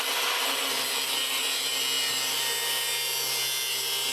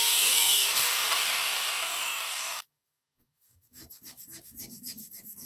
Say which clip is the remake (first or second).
second